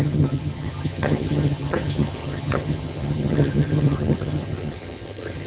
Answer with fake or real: fake